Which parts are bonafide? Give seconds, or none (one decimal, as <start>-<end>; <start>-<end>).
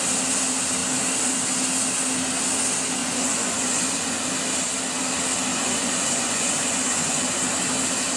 0.0-3.0; 4.2-5.5; 7.2-8.2